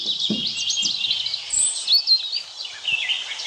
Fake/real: real